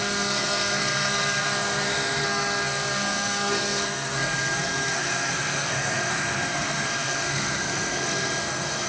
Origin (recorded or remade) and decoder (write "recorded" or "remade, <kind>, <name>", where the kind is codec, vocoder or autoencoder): remade, codec, SNAC